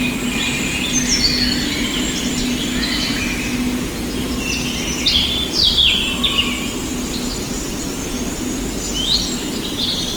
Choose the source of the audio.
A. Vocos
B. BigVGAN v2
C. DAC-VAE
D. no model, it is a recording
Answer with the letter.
D